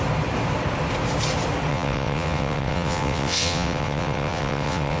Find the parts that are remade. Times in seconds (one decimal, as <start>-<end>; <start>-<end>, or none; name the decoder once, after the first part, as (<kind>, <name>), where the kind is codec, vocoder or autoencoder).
1.7-5.0 (vocoder, WaveNeXt)